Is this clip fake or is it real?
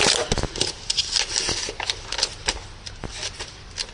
real